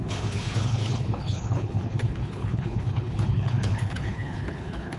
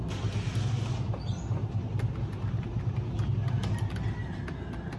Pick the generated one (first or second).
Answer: first